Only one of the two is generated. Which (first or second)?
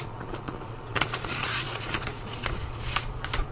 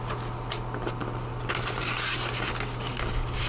first